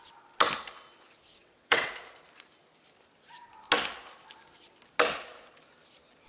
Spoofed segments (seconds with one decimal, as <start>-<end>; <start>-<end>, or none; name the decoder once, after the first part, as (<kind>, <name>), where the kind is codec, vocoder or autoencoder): 1.4-1.9 (vocoder, WaveNeXt)